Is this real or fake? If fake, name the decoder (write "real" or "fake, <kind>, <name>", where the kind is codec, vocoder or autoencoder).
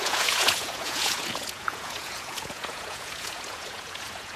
fake, vocoder, Vocos